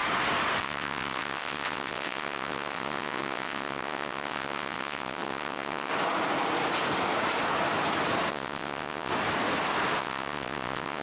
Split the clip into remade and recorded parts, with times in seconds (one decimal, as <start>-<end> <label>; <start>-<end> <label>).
0.0-0.6 recorded; 0.6-5.9 remade; 5.9-8.3 recorded; 8.3-9.1 remade; 9.1-10.0 recorded; 10.0-11.0 remade